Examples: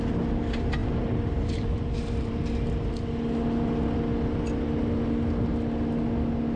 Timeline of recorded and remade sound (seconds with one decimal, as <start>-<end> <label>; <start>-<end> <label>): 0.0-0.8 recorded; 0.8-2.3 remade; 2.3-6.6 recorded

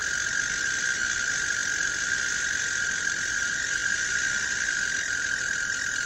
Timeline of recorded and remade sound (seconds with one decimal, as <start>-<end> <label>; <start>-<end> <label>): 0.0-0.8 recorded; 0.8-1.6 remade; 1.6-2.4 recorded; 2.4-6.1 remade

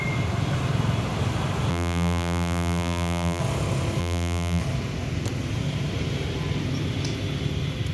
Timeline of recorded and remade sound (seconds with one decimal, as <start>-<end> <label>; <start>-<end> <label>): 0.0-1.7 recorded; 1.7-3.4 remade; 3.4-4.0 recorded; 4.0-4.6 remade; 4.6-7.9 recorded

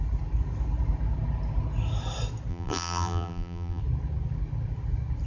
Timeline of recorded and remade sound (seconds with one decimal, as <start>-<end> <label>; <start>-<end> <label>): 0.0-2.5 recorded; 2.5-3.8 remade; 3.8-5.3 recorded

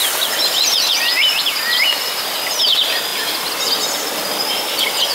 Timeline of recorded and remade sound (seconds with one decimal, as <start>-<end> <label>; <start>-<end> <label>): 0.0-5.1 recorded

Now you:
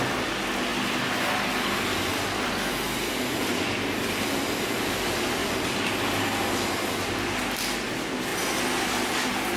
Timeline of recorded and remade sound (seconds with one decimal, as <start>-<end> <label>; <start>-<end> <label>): 0.0-5.4 recorded; 5.4-6.0 remade; 6.0-9.6 recorded

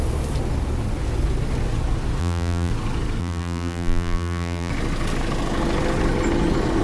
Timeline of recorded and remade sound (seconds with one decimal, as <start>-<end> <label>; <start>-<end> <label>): 0.0-2.2 recorded; 2.2-2.7 remade; 2.7-3.2 recorded; 3.2-4.7 remade; 4.7-6.8 recorded

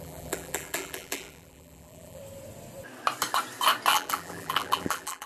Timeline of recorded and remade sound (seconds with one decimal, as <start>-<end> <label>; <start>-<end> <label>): 0.0-2.2 remade; 2.2-3.9 recorded; 3.9-5.3 remade